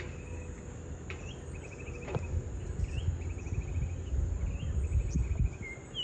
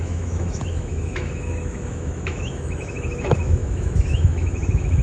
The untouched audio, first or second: first